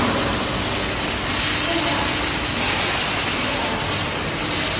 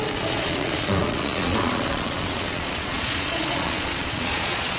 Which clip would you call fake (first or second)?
second